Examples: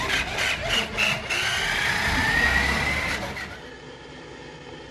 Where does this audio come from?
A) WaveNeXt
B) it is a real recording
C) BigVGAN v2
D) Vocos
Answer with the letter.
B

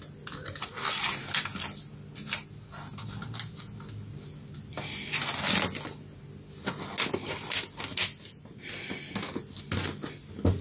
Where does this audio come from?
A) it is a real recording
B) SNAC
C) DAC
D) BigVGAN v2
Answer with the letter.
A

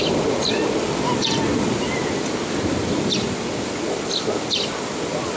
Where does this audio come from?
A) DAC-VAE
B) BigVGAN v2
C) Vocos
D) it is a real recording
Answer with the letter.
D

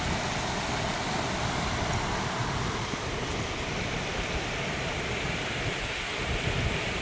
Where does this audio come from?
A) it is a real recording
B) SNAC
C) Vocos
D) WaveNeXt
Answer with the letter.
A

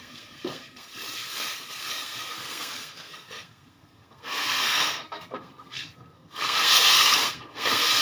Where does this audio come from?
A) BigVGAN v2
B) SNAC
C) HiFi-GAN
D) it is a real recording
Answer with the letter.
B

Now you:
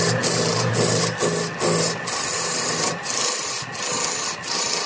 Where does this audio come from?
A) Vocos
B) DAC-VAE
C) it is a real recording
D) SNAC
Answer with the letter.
C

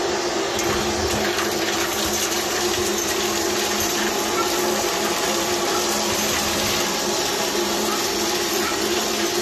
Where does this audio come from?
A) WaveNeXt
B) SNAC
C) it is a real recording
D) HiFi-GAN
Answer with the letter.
C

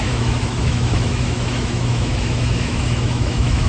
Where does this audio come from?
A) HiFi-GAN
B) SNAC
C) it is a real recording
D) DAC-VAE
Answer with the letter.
D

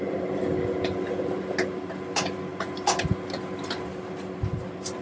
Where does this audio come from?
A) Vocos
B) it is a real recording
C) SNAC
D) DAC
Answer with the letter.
B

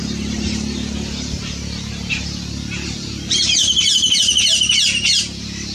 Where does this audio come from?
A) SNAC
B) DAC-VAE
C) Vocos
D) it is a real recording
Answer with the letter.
D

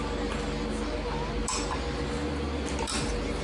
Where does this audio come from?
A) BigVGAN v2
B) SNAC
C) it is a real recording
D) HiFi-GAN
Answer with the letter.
C